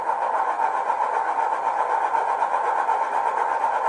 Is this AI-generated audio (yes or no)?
yes